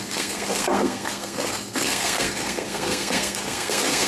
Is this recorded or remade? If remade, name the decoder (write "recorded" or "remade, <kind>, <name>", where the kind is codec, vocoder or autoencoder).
remade, codec, SNAC